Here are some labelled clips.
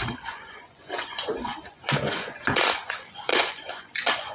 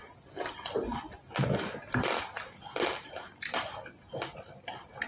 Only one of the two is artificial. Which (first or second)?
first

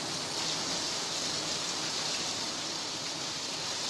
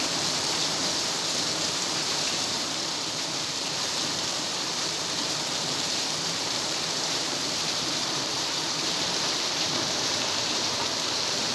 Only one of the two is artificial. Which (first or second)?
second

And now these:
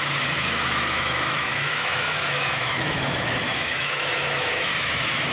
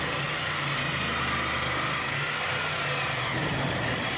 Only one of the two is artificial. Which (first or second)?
first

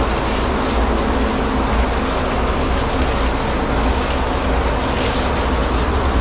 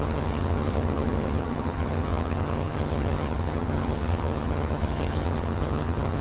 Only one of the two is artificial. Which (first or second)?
second